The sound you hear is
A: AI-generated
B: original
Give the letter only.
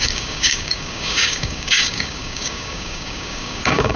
A